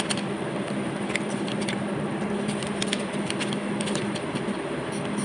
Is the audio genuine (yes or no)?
yes